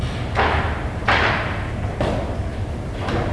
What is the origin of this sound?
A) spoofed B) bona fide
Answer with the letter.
B